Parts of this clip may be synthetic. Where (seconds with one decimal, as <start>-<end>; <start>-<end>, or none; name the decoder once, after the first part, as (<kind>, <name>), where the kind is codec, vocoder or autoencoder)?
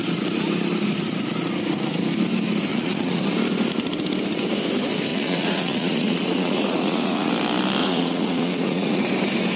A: 2.7-3.2 (vocoder, Vocos); 5.1-7.3; 7.8-9.0